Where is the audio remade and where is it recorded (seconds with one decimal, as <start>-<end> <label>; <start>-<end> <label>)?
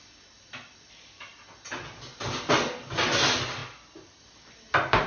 0.0-5.1 recorded